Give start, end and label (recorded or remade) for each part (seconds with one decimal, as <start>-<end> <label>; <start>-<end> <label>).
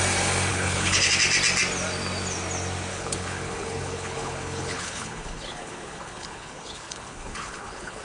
0.0-0.5 recorded; 0.5-1.1 remade; 1.1-2.9 recorded; 2.9-8.0 remade